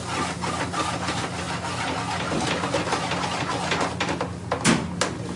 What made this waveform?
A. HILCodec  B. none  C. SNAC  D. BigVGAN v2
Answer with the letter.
B